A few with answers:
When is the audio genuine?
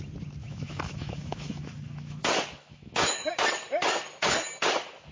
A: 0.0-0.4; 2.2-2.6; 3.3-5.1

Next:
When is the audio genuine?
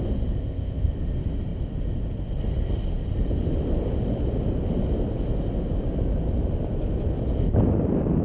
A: 0.0-0.4; 0.9-8.2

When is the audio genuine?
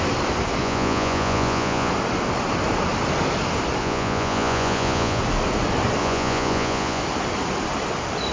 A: 0.0-0.6; 1.9-3.8; 5.2-6.0; 7.0-8.3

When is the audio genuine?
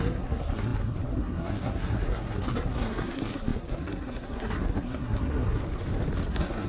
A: 5.6-6.3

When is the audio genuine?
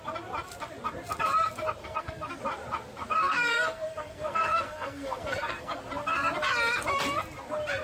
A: 0.0-1.8; 2.4-3.2; 5.8-7.8